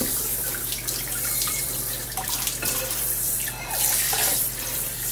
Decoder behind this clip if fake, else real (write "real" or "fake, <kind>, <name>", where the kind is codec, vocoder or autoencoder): fake, vocoder, BigVGAN v2